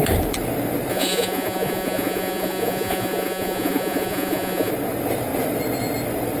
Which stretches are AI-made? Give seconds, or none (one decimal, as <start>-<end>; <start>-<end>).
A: 0.9-4.7